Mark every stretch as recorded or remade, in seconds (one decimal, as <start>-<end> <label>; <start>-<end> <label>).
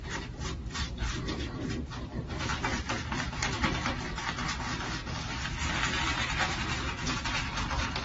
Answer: 0.0-2.7 recorded; 2.7-3.9 remade; 3.9-8.0 recorded